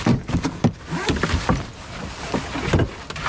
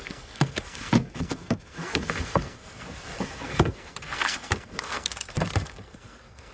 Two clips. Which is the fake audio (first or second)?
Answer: second